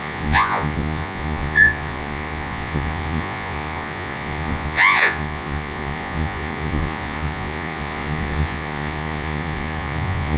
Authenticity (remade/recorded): remade